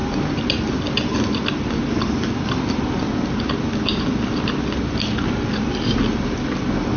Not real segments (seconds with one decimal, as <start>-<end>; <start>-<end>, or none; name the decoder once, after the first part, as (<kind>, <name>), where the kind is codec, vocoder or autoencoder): none